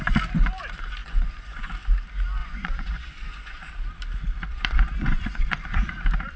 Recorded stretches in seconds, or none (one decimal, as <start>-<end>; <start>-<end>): 0.0-1.0; 1.7-2.4; 3.7-4.5; 5.9-6.4